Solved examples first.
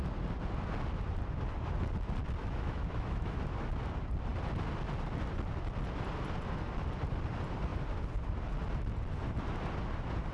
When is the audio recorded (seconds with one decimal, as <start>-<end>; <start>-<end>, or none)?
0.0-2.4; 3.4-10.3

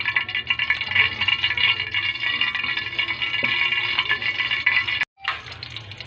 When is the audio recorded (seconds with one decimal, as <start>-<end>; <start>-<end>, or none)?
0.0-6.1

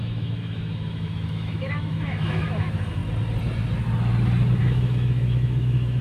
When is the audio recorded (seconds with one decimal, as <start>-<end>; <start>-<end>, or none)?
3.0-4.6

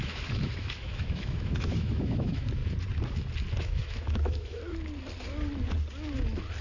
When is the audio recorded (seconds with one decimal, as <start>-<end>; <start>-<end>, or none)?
2.6-3.6; 4.6-6.6

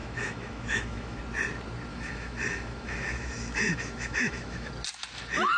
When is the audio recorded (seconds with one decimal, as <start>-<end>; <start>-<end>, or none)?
1.2-1.9; 4.7-5.6